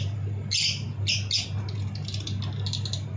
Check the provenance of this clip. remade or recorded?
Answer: recorded